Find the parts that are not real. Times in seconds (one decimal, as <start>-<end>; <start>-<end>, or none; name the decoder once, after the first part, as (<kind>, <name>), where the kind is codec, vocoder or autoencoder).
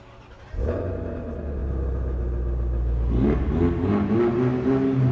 none